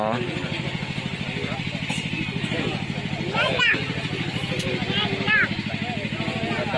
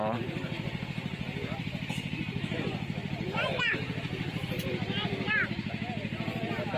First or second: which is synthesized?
second